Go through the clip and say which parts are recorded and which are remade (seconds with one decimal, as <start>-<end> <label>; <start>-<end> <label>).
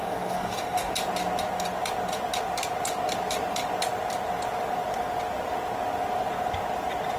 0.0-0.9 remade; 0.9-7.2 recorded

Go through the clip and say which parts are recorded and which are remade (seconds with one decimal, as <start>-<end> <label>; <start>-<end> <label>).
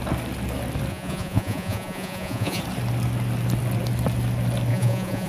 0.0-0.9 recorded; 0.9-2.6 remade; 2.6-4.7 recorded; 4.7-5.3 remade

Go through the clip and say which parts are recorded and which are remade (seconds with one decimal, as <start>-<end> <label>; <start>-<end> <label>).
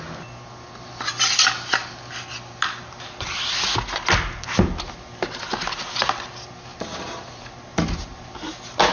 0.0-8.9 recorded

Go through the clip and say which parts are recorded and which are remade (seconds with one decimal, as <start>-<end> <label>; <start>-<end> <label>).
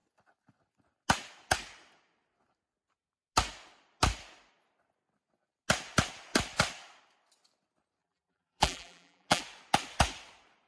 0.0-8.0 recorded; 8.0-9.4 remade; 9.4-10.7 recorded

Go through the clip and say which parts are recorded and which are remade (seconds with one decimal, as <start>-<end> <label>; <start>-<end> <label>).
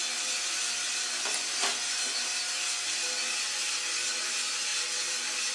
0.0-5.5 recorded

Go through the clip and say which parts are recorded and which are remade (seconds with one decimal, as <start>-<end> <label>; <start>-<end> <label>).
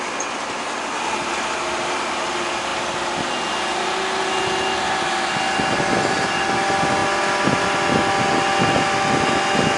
0.0-9.8 recorded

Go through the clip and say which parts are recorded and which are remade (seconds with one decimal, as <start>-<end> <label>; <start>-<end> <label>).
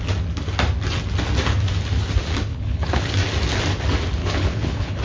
0.0-2.5 recorded; 2.5-3.1 remade; 3.1-4.2 recorded; 4.2-5.0 remade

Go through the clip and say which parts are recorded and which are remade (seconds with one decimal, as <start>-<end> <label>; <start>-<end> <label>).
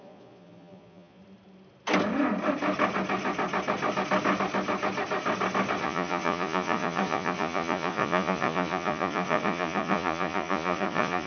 0.0-1.2 remade; 1.2-5.8 recorded; 5.8-11.3 remade